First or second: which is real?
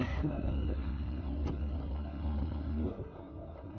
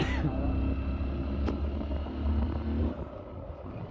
second